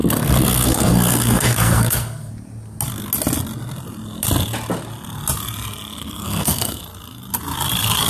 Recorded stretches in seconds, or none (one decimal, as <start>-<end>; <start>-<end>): 2.3-6.0; 6.8-8.1